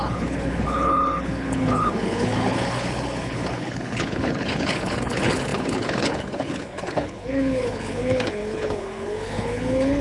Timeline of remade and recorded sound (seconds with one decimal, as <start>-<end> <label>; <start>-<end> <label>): 0.0-10.0 remade